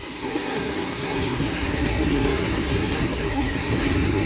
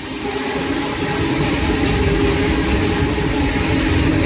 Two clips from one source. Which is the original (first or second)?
second